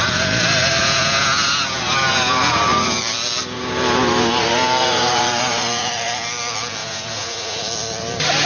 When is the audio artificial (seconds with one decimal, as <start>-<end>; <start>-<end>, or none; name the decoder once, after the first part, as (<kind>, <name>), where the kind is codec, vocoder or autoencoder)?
0.8-1.8 (vocoder, Vocos); 6.8-7.6